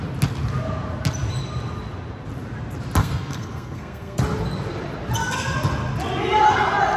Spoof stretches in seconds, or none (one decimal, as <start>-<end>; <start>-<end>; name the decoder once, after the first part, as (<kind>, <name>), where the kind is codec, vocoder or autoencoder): 3.0-4.2 (codec, SNAC)